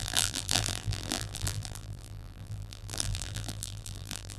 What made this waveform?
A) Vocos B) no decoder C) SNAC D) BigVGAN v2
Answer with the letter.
D